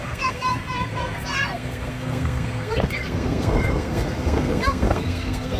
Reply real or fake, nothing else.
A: fake